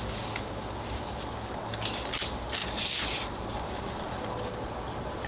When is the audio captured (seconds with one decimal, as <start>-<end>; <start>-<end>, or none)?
0.0-5.3